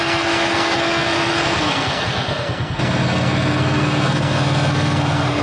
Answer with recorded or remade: remade